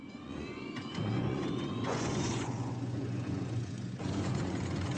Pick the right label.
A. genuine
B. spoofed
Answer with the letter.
B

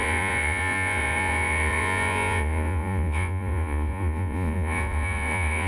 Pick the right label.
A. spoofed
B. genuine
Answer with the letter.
A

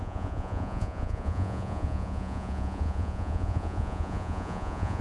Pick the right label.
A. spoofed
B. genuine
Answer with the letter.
A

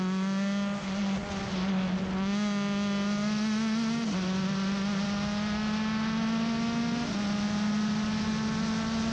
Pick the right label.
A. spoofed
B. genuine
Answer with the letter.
B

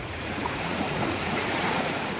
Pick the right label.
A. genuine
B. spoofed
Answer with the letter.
B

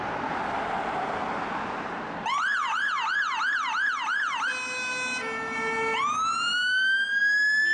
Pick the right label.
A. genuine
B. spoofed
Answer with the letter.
A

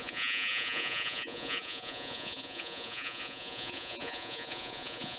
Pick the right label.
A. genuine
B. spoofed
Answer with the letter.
B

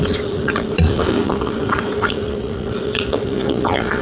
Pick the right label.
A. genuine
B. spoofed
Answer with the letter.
B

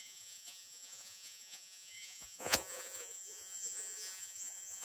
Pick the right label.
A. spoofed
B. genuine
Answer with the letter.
A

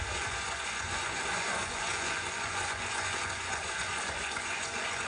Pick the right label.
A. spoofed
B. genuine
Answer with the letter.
A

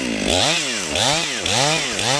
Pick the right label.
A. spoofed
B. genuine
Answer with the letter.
B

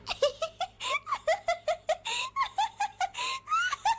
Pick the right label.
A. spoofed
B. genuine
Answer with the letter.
B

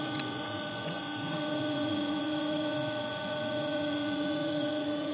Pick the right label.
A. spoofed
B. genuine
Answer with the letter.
A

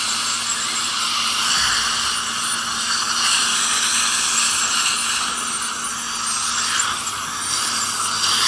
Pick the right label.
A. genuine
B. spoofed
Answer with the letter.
A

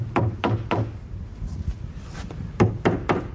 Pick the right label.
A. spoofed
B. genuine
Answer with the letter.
B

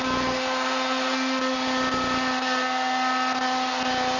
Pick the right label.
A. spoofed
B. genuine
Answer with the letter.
B